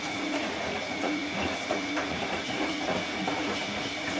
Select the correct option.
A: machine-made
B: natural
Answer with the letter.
A